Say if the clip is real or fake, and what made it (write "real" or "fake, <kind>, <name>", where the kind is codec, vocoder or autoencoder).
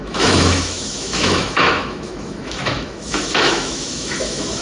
fake, autoencoder, DAC-VAE